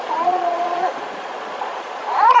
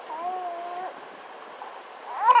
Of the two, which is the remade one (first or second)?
first